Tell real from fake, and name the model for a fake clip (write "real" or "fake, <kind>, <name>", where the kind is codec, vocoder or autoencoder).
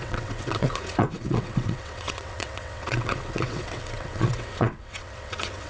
fake, vocoder, WaveNeXt